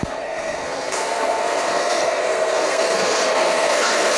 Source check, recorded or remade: remade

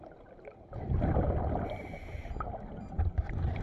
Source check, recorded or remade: recorded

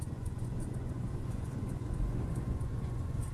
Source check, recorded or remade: remade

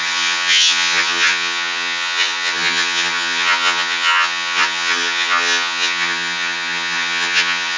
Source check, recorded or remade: remade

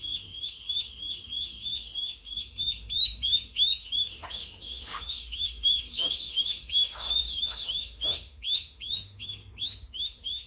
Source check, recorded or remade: remade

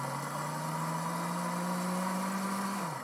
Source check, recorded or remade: recorded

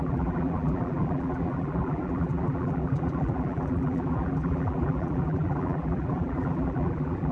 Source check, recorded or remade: remade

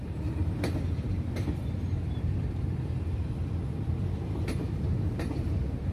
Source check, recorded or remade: remade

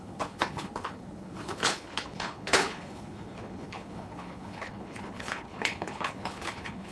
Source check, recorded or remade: remade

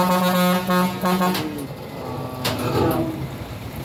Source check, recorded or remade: recorded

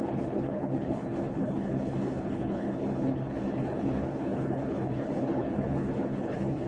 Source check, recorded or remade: remade